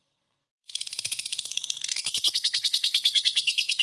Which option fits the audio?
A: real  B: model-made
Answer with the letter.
B